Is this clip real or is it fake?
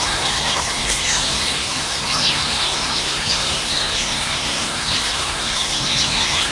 fake